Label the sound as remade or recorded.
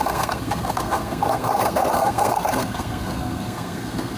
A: remade